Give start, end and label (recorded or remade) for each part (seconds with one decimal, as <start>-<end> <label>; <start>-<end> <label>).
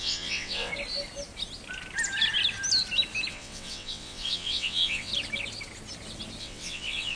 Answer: 0.0-0.7 remade; 0.7-3.3 recorded; 3.3-5.1 remade; 5.1-6.4 recorded; 6.4-7.2 remade